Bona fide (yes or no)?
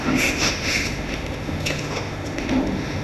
no